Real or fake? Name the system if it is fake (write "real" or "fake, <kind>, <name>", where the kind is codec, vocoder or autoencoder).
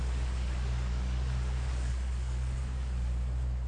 fake, codec, DAC